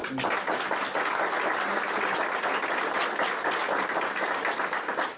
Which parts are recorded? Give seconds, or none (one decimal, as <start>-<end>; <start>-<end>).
0.0-5.2